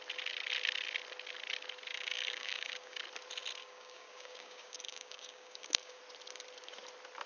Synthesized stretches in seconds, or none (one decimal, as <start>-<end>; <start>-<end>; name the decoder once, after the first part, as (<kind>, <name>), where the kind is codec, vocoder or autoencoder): 1.9-3.0 (codec, DAC); 3.6-6.0